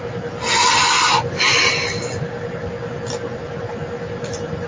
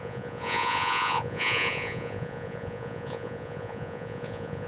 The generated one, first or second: second